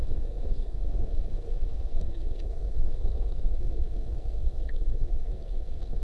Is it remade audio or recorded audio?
remade